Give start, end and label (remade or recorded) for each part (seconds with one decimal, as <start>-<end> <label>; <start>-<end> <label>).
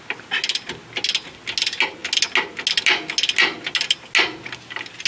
0.0-5.1 recorded